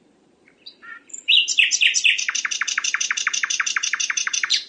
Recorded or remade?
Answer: remade